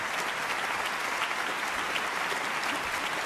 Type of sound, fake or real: real